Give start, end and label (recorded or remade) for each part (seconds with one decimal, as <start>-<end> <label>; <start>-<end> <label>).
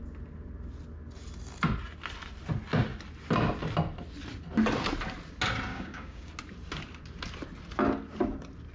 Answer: 0.0-5.7 recorded; 5.7-6.3 remade; 6.3-8.7 recorded